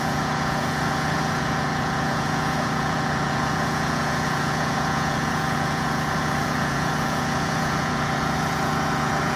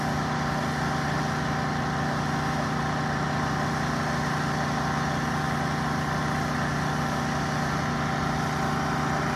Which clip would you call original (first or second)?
second